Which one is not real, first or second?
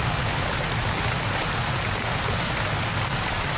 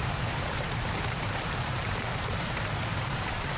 second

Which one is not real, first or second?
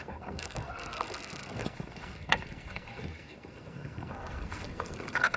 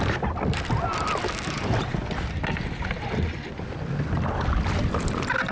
first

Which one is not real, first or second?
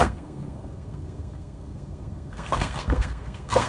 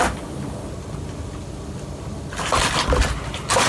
first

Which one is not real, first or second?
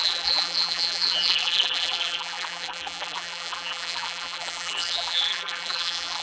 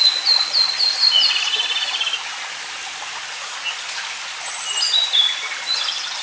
first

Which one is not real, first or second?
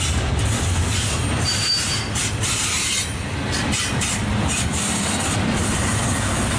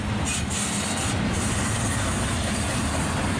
first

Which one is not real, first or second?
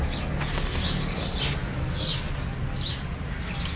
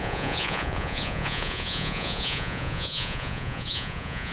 second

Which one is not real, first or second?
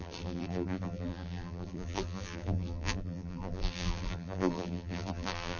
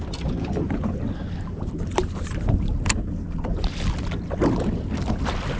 first